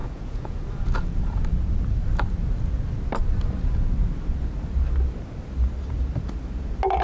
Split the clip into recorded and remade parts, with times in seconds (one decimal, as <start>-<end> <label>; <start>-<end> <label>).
0.0-0.6 remade; 0.6-7.0 recorded